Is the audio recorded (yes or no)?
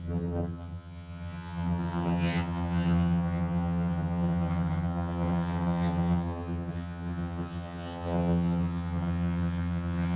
no